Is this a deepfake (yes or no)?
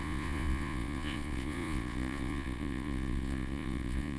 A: yes